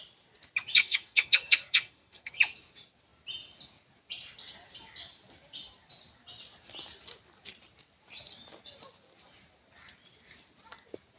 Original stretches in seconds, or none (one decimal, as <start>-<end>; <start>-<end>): 0.0-0.8; 2.4-11.2